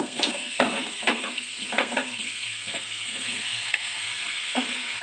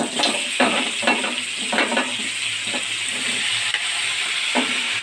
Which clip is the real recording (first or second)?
second